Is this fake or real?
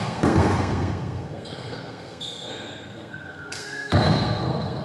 fake